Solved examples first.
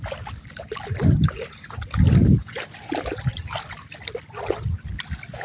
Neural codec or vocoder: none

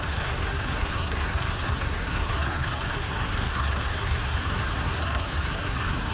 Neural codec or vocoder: codec, SNAC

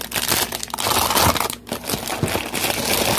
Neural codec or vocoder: none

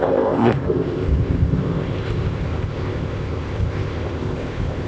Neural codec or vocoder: codec, ZipCodec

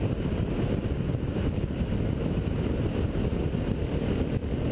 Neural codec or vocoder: none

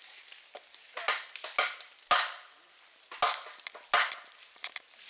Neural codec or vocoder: none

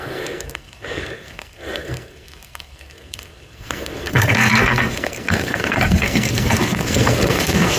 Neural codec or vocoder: codec, SNAC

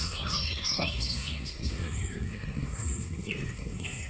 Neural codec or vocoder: codec, SNAC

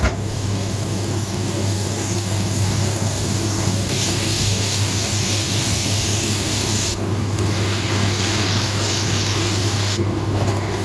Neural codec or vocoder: codec, DAC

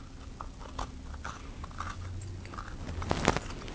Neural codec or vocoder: none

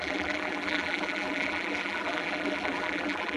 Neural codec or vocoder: vocoder, BigVGAN v2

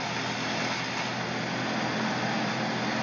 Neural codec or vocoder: none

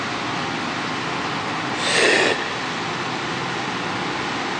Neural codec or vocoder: none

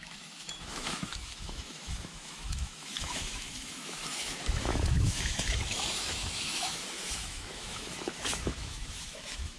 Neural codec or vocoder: autoencoder, DAC-VAE